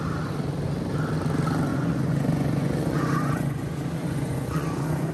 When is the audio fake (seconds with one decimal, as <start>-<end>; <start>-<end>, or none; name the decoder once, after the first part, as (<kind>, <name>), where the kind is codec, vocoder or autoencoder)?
1.7-5.1 (vocoder, Vocos)